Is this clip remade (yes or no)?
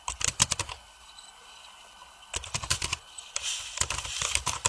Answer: no